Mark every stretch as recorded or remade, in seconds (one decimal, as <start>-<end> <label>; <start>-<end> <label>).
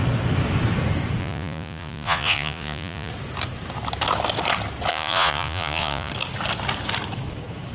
0.0-1.2 recorded; 1.2-3.1 remade; 3.1-4.9 recorded; 4.9-6.1 remade; 6.1-7.7 recorded